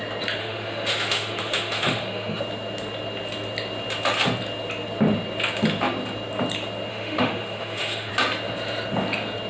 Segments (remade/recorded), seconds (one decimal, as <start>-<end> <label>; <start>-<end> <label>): 0.0-0.4 recorded; 0.4-2.4 remade; 2.4-6.9 recorded; 6.9-8.1 remade; 8.1-9.5 recorded